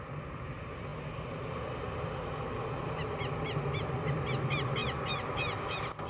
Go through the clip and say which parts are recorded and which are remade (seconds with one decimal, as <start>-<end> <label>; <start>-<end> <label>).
0.0-6.1 recorded

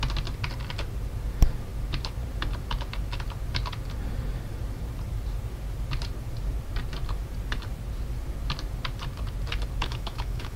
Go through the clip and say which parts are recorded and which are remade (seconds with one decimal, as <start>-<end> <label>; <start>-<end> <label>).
0.0-9.8 recorded; 9.8-10.6 remade

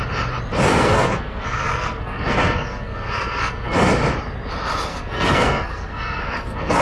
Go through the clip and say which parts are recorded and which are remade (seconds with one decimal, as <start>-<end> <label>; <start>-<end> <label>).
0.0-0.7 recorded; 0.7-3.9 remade; 3.9-4.9 recorded; 4.9-6.8 remade

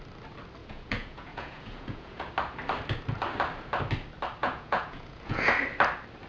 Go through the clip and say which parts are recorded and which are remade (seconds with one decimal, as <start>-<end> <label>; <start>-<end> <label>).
0.0-0.6 recorded; 0.6-2.3 remade; 2.3-4.4 recorded; 4.4-5.5 remade; 5.5-6.3 recorded

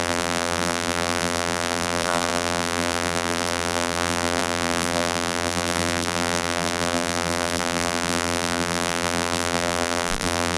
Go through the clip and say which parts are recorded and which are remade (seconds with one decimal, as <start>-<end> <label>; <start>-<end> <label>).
0.0-10.6 remade

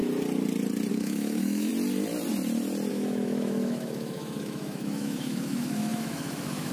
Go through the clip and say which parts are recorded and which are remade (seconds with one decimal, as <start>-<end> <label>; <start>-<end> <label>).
0.0-0.9 recorded; 0.9-1.7 remade; 1.7-2.9 recorded; 2.9-6.7 remade

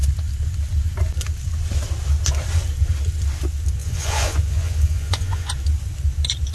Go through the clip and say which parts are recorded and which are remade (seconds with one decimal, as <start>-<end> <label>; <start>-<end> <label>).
0.0-3.8 recorded; 3.8-5.5 remade; 5.5-6.5 recorded

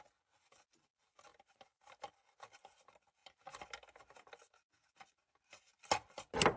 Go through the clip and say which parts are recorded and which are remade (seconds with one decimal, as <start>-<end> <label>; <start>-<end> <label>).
0.0-1.3 recorded; 1.3-2.1 remade; 2.1-5.7 recorded; 5.7-6.6 remade